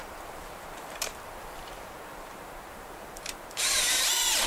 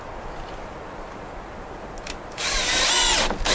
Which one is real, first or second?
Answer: second